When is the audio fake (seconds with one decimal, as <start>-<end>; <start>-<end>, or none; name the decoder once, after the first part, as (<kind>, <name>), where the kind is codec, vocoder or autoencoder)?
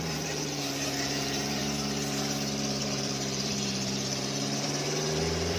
0.0-1.6 (vocoder, BigVGAN v2); 2.8-5.6